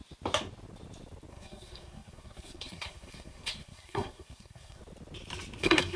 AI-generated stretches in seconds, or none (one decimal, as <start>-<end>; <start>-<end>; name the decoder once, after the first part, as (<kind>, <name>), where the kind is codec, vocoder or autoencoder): 1.3-4.8 (codec, SNAC); 5.6-6.0